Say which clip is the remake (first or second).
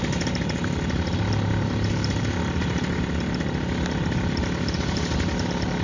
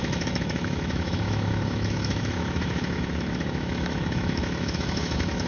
second